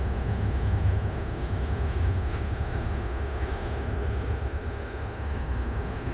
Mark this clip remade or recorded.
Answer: remade